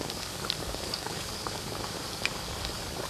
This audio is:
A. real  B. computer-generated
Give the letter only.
B